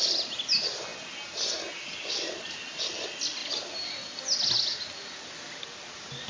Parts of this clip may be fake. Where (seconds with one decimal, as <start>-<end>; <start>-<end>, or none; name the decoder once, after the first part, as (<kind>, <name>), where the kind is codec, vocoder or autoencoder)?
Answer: 0.0-0.9 (vocoder, BigVGAN v2); 2.8-6.3